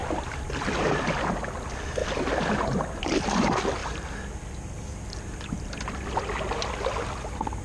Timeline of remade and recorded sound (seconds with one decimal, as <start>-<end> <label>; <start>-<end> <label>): 0.0-0.9 remade; 0.9-3.8 recorded; 3.8-5.4 remade; 5.4-7.6 recorded